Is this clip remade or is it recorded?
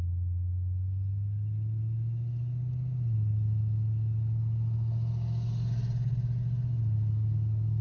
recorded